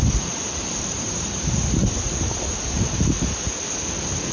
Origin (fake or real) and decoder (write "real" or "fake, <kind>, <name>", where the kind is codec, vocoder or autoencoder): real